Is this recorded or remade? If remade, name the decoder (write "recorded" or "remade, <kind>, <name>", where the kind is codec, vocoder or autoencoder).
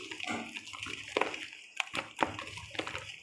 recorded